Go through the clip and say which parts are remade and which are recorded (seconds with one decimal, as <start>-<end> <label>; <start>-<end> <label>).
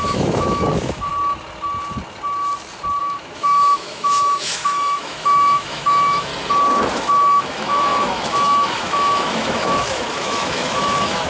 0.0-1.1 remade; 1.1-3.0 recorded; 3.0-6.3 remade; 6.3-6.9 recorded; 6.9-11.3 remade